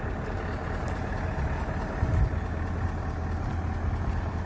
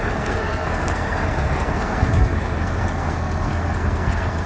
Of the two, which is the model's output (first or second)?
second